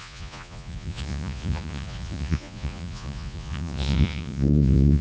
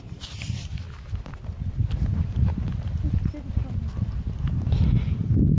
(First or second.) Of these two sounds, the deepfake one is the first